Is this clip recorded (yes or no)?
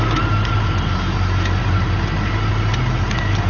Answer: yes